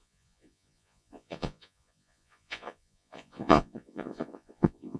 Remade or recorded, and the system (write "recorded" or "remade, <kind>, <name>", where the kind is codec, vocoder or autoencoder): remade, vocoder, Vocos